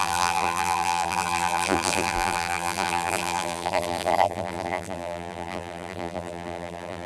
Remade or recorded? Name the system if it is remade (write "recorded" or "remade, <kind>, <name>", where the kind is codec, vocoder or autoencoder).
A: remade, vocoder, BigVGAN v2